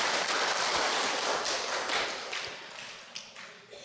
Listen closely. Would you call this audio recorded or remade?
recorded